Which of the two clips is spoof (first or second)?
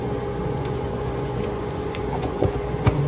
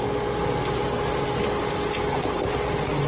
first